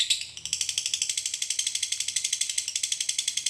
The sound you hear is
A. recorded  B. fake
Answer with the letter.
A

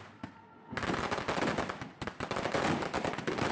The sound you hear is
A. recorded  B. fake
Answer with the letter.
A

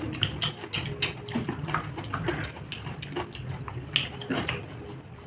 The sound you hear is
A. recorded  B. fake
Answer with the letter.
A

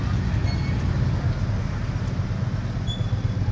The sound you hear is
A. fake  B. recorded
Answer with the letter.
B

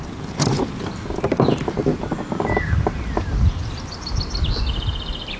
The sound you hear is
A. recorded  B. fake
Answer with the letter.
B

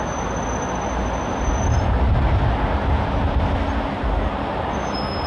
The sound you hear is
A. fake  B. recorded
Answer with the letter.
B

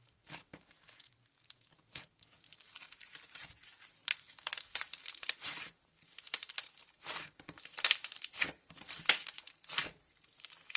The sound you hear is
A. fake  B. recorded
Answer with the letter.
A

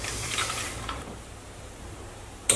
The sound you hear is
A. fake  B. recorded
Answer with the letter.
A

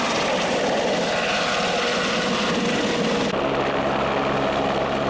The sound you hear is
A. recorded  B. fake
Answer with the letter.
A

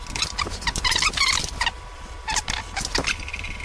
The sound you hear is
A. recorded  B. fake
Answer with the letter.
A